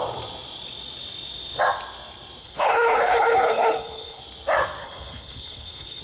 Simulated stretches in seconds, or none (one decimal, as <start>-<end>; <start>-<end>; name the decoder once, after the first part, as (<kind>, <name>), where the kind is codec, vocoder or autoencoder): 2.4-4.2 (codec, HILCodec); 4.8-6.0